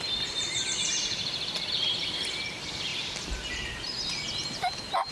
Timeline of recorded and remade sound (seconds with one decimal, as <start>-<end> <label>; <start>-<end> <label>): 0.0-5.1 remade